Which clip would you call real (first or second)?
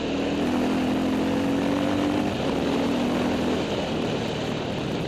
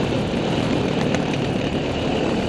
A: first